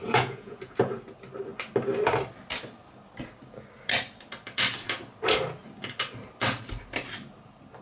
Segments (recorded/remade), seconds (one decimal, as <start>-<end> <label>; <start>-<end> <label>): 0.0-0.8 remade; 0.8-7.8 recorded